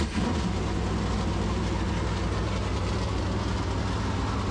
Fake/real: real